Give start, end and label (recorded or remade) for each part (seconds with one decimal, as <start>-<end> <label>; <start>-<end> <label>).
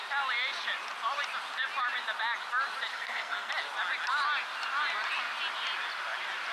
0.0-2.9 recorded; 2.9-3.5 remade; 3.5-6.5 recorded